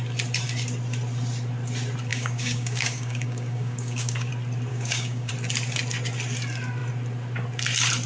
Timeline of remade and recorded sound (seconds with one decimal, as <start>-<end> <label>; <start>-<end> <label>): 0.0-2.1 recorded; 2.1-4.3 remade; 4.3-4.7 recorded; 4.7-5.3 remade; 5.3-8.1 recorded